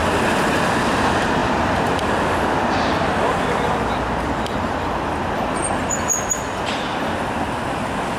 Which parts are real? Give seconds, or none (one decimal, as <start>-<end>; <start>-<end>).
0.0-8.2